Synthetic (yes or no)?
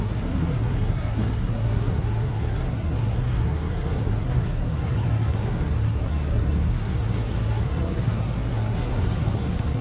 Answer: yes